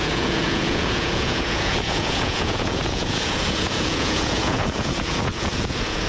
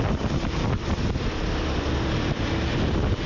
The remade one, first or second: first